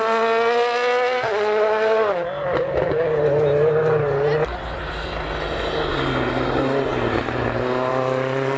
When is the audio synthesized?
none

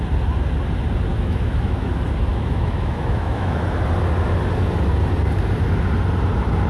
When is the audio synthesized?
1.1-1.9 (autoencoder, DAC-VAE); 2.3-3.6

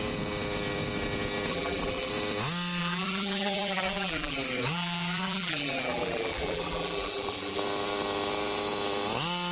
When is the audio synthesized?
1.5-2.1 (vocoder, BigVGAN v2); 2.8-7.6

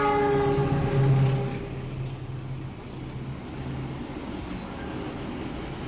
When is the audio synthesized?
none

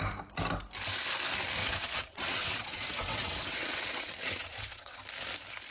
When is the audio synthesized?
1.6-5.0 (vocoder, WaveNeXt)

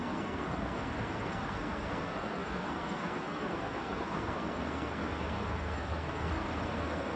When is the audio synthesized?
0.0-7.2 (codec, SNAC)